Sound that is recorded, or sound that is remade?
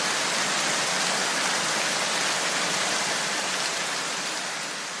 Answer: recorded